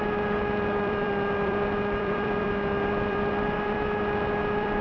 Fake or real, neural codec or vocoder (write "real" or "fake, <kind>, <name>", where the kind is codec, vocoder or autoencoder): fake, vocoder, BigVGAN v2